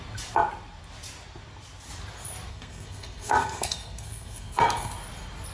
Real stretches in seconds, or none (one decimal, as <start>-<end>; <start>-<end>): 0.0-2.5; 4.9-5.5